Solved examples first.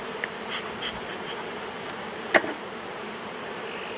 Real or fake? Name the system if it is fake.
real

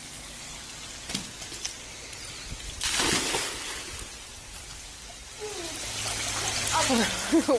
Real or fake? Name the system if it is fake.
real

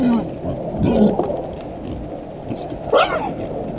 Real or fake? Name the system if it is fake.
real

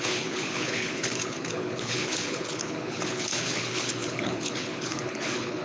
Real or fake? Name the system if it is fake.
fake, codec, HILCodec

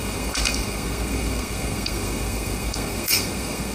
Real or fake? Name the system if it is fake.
fake, codec, SNAC